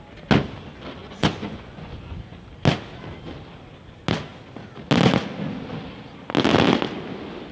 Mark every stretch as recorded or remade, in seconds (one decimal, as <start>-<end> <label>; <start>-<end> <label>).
0.0-1.0 recorded; 1.0-2.5 remade; 2.5-7.5 recorded